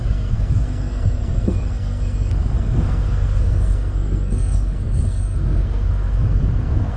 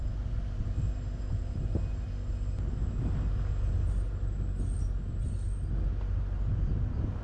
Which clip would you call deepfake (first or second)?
first